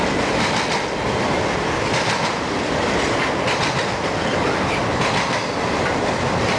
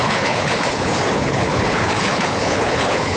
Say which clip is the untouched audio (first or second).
first